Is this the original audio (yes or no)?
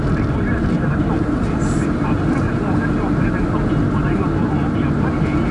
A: yes